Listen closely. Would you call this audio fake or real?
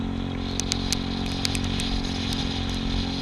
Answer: real